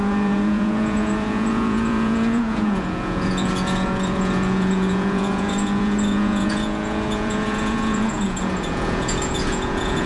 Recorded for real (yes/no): no